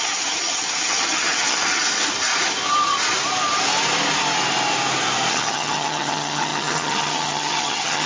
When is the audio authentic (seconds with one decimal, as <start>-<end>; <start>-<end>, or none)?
1.8-5.3